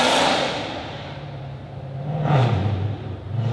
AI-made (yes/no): yes